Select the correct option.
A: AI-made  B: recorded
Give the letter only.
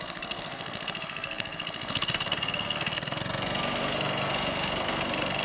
A